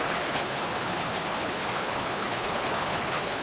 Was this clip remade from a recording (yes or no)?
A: yes